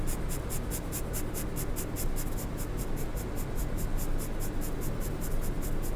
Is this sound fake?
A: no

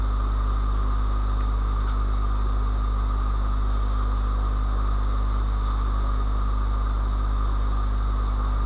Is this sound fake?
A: no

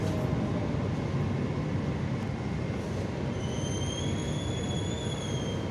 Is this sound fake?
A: no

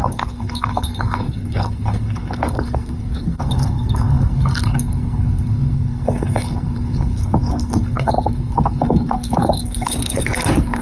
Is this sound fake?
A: yes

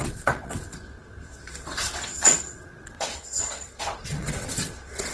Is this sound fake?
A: yes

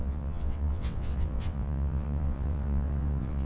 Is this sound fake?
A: yes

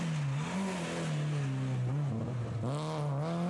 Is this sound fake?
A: no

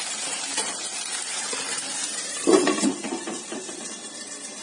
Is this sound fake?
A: yes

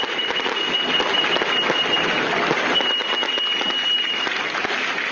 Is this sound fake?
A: no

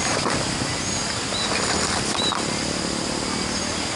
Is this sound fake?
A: no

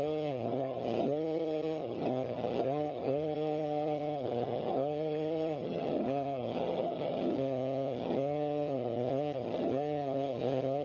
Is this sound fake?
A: yes